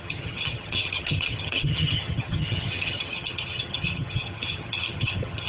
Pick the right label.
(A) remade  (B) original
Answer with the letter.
A